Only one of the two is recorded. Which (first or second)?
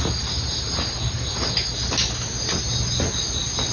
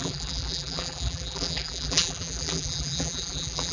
first